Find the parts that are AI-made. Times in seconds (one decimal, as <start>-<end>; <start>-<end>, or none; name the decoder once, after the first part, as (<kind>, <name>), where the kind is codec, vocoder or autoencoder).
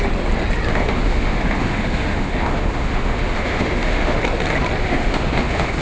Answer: 0.7-4.2 (autoencoder, DAC-VAE); 4.8-5.8